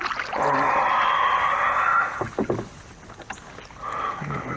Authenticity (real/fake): real